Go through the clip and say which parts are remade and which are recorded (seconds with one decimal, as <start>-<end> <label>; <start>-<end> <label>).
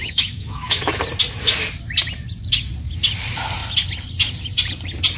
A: 0.0-1.0 remade; 1.0-5.2 recorded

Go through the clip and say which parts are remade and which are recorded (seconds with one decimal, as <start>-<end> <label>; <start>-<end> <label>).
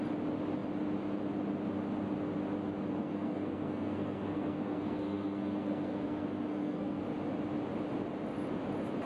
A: 0.0-3.0 recorded; 3.0-7.0 remade; 7.0-9.1 recorded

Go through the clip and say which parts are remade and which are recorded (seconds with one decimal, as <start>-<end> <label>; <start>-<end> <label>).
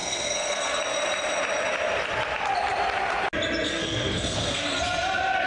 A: 0.0-0.8 remade; 0.8-3.7 recorded; 3.7-4.8 remade; 4.8-5.5 recorded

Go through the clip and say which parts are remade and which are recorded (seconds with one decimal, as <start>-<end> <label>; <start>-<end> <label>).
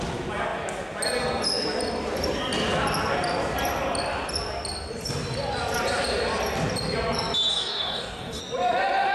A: 0.0-7.5 recorded; 7.5-8.4 remade; 8.4-9.1 recorded